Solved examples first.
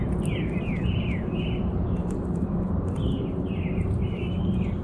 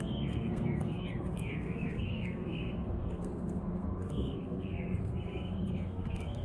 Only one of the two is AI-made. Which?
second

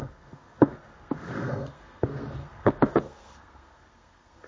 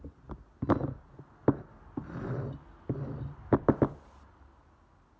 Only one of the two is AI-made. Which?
first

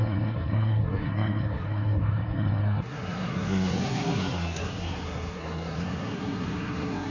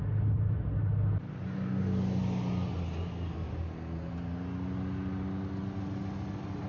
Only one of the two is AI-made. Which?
first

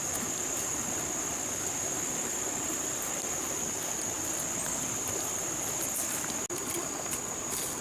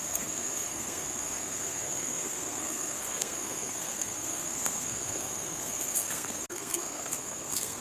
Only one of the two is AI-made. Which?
second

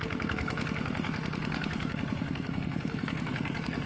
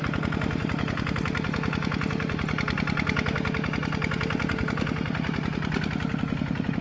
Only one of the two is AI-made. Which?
first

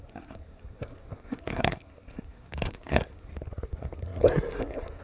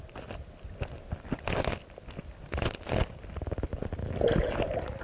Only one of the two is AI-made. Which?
first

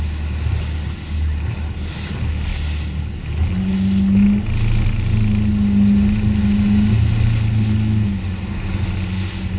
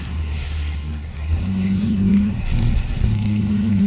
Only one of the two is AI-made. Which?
second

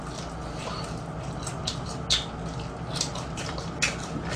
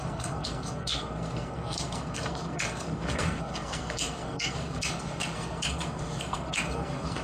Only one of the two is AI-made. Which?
second